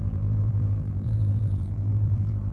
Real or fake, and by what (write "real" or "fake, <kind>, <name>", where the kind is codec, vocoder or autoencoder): fake, vocoder, BigVGAN v2